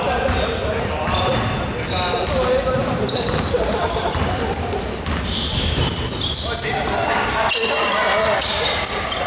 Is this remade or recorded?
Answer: recorded